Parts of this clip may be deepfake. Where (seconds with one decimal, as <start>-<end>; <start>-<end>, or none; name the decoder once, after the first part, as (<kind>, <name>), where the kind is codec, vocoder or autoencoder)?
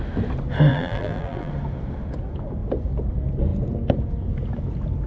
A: 0.7-1.5 (vocoder, BigVGAN v2)